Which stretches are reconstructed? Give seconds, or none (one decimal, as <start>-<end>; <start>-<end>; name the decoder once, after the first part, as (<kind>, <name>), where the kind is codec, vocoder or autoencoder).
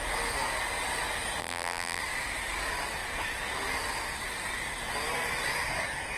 1.4-2.0 (vocoder, BigVGAN v2)